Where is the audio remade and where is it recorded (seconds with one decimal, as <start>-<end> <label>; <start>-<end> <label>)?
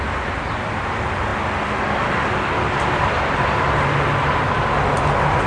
0.0-5.5 recorded